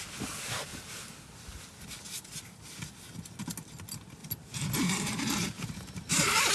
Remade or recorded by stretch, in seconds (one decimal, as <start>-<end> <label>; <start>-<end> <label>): 0.0-0.7 recorded; 0.7-1.6 remade; 1.6-4.2 recorded; 4.2-6.5 remade